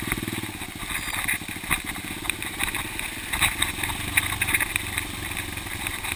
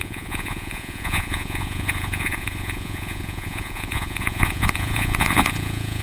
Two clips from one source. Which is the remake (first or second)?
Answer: second